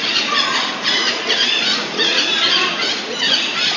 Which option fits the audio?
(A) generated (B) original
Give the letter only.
A